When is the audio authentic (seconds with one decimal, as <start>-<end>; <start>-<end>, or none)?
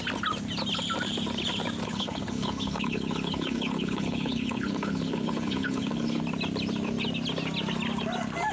0.0-1.8; 6.2-8.5